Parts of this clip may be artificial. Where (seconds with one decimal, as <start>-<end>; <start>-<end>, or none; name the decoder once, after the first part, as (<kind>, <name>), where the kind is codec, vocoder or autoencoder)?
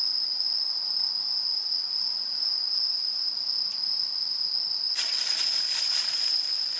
none